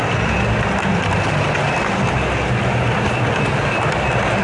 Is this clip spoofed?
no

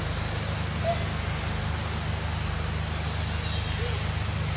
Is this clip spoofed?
no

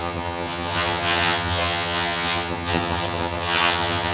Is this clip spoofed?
yes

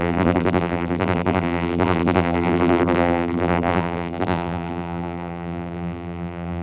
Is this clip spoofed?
yes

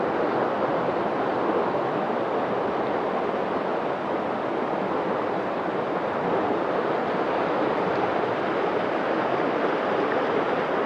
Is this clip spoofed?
no